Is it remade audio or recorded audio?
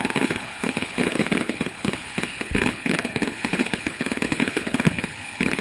remade